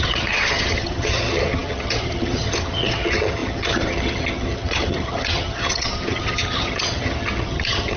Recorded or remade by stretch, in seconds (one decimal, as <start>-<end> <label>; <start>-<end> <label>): 0.0-8.0 remade